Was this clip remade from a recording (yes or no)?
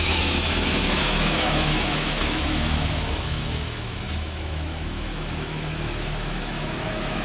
yes